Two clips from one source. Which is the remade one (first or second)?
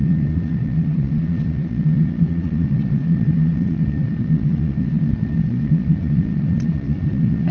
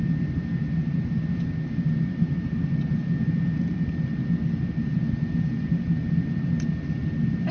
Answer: first